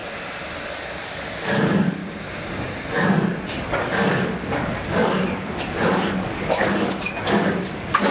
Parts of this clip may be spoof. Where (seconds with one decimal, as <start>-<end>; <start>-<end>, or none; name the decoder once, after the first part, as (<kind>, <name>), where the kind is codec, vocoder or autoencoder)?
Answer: 0.8-2.0 (codec, DAC); 3.6-8.1

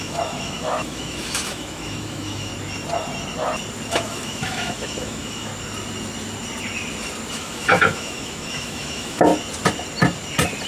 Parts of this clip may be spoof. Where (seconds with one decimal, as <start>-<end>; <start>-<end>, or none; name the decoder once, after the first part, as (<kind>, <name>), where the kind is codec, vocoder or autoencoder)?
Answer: 0.0-2.5 (autoencoder, DAC-VAE); 3.9-5.5; 7.3-9.3

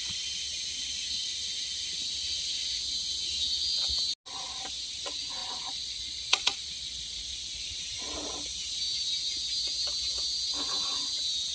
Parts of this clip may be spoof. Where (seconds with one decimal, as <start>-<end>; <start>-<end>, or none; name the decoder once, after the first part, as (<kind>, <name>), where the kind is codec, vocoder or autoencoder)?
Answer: 5.4-7.8 (vocoder, Vocos)

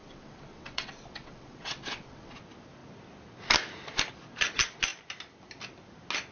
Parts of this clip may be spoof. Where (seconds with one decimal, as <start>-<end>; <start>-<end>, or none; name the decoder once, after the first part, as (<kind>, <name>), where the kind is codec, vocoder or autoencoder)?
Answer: 0.0-2.4 (vocoder, WaveNeXt)